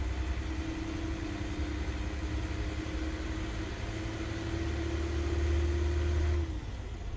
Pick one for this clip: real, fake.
real